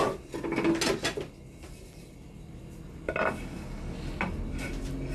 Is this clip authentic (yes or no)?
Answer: yes